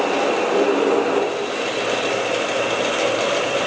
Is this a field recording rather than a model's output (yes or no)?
yes